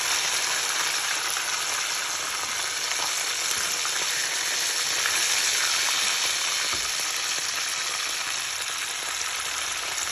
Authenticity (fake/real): real